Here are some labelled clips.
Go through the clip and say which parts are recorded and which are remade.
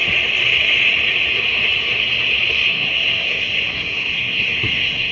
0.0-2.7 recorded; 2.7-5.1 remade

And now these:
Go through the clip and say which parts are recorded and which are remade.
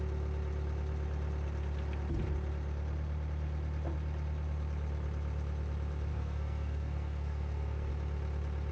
0.0-6.1 recorded; 6.1-7.9 remade; 7.9-8.7 recorded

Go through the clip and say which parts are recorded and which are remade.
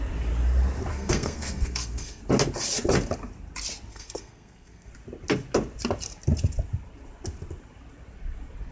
0.0-0.9 recorded; 0.9-2.2 remade; 2.2-3.9 recorded; 3.9-4.9 remade; 4.9-8.7 recorded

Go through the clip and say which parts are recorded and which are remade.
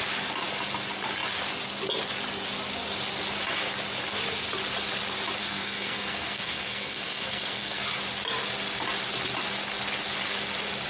0.0-5.4 recorded; 5.4-7.8 remade; 7.8-10.9 recorded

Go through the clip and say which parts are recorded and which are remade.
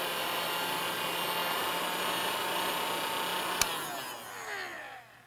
0.0-5.3 recorded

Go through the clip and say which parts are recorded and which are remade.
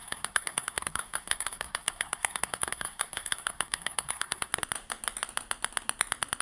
0.0-4.5 remade; 4.5-6.4 recorded